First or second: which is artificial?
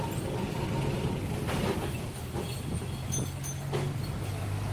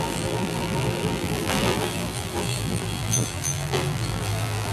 second